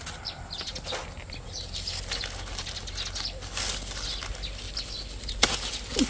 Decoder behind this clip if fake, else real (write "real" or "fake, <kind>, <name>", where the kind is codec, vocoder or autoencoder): real